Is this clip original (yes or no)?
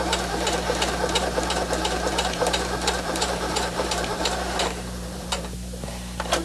no